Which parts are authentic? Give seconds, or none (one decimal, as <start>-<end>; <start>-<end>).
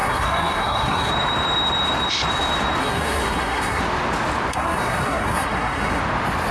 1.1-2.8; 3.8-4.5; 6.0-6.5